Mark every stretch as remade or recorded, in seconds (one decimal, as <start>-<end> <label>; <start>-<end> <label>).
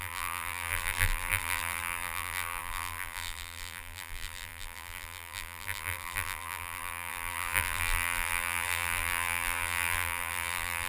0.0-10.9 remade